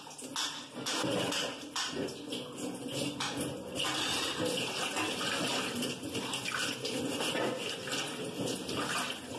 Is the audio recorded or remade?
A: recorded